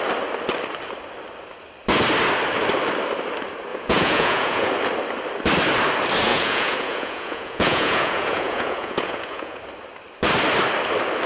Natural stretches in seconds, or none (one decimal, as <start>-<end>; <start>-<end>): 0.0-3.7; 4.7-6.3; 9.6-11.3